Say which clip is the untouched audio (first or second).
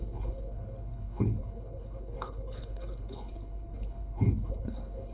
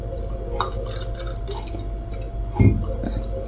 second